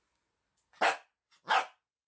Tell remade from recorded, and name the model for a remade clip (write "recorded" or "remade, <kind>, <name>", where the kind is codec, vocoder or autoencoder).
recorded